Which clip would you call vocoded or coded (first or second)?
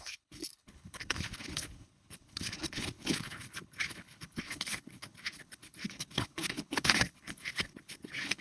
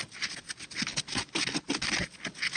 first